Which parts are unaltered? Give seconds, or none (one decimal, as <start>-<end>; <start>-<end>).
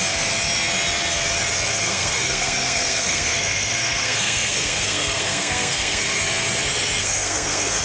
0.0-1.8; 6.0-7.0